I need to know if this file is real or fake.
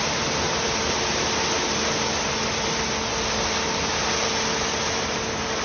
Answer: real